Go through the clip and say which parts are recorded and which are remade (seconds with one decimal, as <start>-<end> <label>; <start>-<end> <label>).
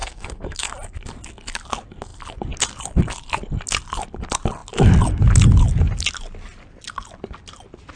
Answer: 0.0-0.7 remade; 0.7-8.0 recorded